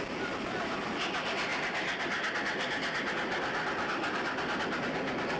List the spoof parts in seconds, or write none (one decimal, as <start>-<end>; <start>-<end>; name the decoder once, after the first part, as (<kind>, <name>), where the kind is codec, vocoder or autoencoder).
none